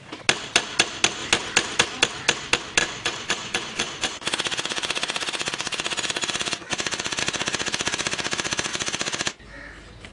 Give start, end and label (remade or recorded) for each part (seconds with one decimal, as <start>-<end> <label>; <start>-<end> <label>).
0.0-2.8 recorded; 2.8-7.2 remade; 7.2-10.1 recorded